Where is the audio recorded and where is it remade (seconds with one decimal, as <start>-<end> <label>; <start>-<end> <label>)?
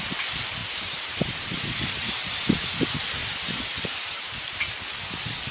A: 0.0-0.6 recorded; 0.6-2.3 remade; 2.3-3.2 recorded; 3.2-4.2 remade; 4.2-5.5 recorded